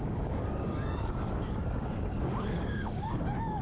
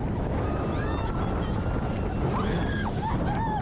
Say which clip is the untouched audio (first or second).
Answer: second